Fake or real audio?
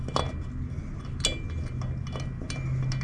real